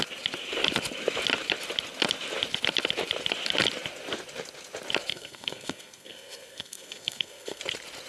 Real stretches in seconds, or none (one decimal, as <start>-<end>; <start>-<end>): 0.0-5.1; 7.6-8.1